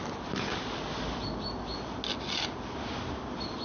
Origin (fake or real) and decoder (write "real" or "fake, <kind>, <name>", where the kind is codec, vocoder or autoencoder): real